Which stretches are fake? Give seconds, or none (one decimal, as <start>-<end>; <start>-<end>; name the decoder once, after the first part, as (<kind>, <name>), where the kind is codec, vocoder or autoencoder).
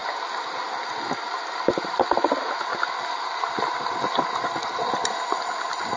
none